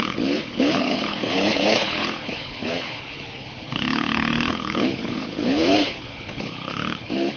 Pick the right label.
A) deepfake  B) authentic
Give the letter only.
A